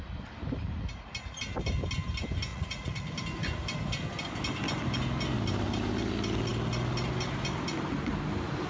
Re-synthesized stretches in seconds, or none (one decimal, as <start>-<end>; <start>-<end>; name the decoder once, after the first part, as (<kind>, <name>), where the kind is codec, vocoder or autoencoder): 2.5-3.1 (vocoder, Vocos)